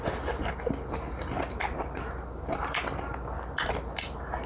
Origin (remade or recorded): recorded